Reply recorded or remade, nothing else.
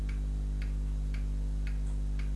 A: remade